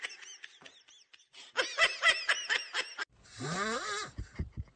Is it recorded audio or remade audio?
recorded